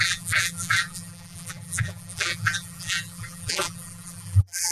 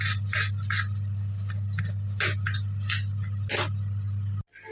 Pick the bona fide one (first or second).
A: second